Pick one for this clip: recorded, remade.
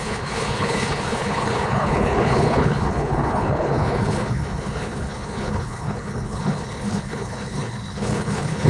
remade